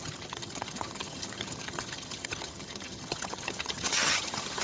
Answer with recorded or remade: remade